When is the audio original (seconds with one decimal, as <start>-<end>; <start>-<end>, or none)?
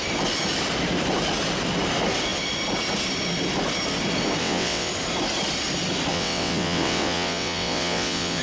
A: 0.0-4.4; 4.9-6.1